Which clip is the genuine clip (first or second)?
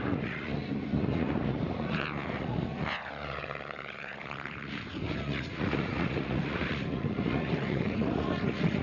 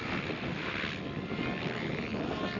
second